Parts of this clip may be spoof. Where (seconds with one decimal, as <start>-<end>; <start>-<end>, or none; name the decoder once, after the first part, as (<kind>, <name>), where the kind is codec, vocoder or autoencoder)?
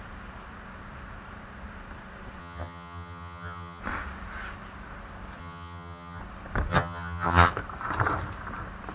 2.4-3.8 (vocoder, HiFi-GAN); 5.4-6.2; 6.7-7.5